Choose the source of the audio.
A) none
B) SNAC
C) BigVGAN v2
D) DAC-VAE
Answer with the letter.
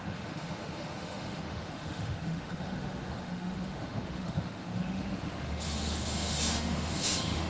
D